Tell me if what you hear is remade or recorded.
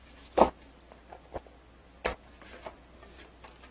recorded